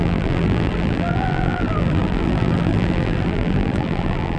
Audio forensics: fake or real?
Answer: fake